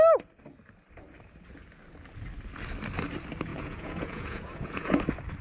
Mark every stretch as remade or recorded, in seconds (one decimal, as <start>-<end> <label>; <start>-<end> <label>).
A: 0.0-3.5 recorded; 3.5-5.0 remade; 5.0-5.4 recorded